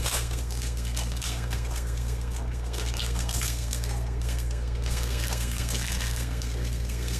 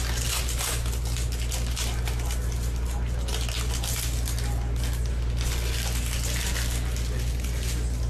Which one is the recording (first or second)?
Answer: second